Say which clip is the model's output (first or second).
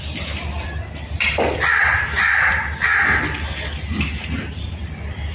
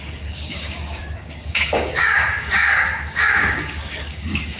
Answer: second